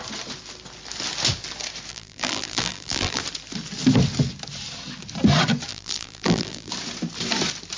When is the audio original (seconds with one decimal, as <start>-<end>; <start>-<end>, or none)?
0.0-1.9; 3.2-5.7; 6.7-7.8